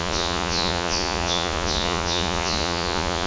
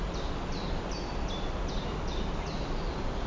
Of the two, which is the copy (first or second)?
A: first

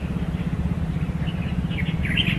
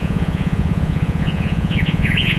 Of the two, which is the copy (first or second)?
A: second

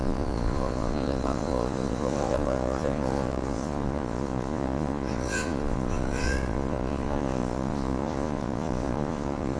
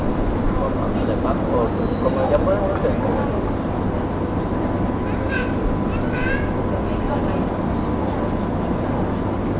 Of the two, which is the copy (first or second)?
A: first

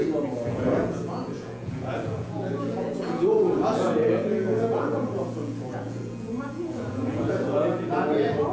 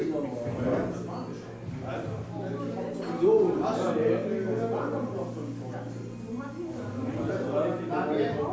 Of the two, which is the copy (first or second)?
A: first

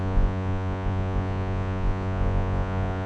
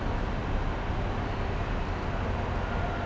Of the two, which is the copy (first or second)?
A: first